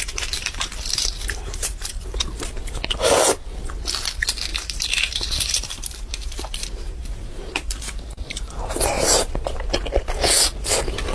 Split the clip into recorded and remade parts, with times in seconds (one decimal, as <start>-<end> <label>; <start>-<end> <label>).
0.0-0.4 recorded; 0.4-2.3 remade; 2.3-4.5 recorded; 4.5-9.7 remade; 9.7-11.1 recorded